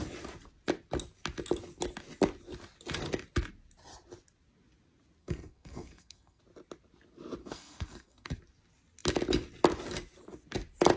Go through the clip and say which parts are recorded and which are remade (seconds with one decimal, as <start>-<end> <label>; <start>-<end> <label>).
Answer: 0.0-5.2 recorded; 5.2-6.4 remade; 6.4-7.4 recorded; 7.4-8.4 remade; 8.4-11.0 recorded